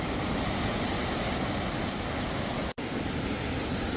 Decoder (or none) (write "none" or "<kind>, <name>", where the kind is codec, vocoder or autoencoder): none